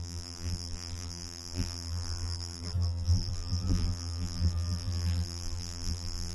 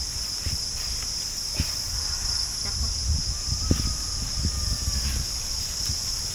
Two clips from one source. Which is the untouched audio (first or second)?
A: second